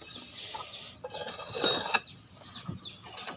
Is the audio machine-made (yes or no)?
no